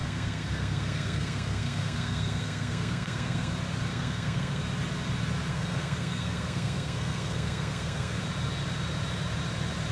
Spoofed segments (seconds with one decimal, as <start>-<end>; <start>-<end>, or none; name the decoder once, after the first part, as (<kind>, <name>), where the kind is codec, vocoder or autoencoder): 0.0-3.5 (codec, SNAC); 3.9-4.6; 5.5-8.2